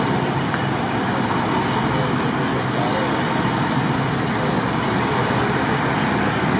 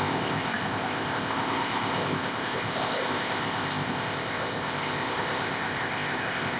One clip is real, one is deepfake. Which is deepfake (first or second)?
second